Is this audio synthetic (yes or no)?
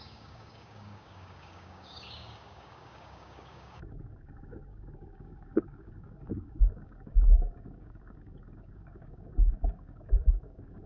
yes